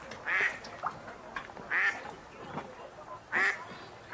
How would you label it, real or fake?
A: real